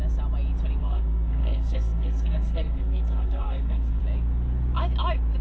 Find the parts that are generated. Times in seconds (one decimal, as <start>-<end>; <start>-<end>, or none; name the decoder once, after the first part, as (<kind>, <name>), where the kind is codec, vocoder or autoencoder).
0.8-4.0 (codec, SNAC)